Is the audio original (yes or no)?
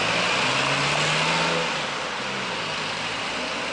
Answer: yes